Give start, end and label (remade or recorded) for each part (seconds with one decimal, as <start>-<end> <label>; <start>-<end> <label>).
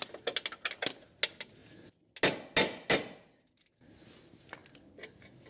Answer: 0.0-5.5 recorded